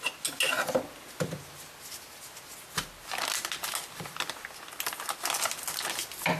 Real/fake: real